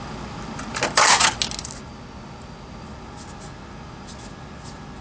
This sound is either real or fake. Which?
real